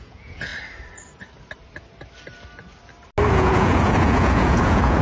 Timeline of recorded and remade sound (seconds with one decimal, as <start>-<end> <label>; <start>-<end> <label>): 0.0-0.5 remade; 0.5-3.3 recorded; 3.3-5.0 remade